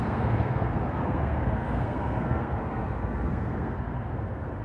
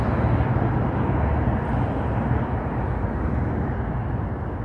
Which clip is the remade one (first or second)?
first